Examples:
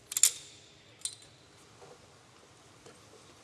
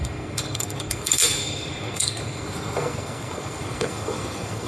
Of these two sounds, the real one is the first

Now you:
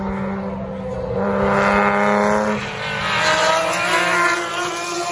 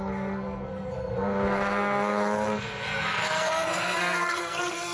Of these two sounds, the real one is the first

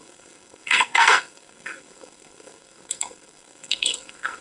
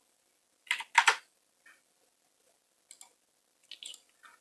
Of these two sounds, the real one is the second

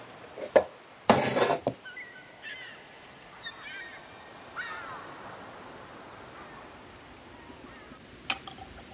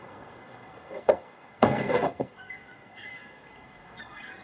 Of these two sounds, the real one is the first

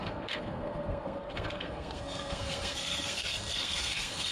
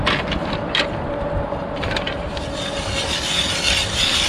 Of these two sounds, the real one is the second